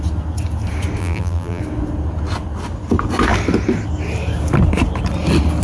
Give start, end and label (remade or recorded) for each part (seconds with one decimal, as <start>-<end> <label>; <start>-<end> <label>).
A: 0.0-1.0 recorded; 1.0-1.6 remade; 1.6-5.6 recorded